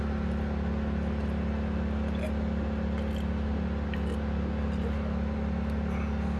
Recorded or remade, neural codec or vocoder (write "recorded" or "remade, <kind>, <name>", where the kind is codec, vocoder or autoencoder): recorded